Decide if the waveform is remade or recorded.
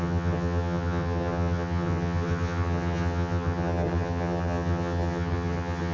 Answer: remade